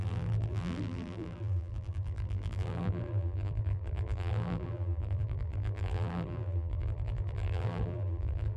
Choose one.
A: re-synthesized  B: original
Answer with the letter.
A